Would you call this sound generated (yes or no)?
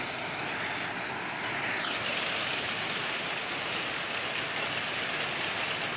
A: no